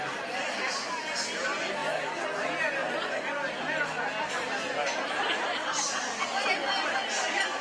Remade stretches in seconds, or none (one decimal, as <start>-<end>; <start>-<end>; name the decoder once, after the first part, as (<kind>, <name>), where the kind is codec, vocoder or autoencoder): none